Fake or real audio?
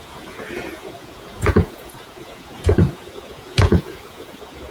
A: fake